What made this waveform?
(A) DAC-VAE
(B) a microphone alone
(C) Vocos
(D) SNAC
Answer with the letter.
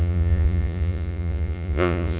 C